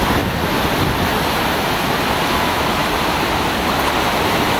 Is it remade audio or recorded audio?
recorded